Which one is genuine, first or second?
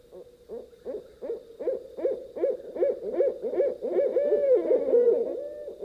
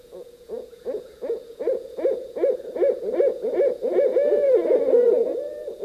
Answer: first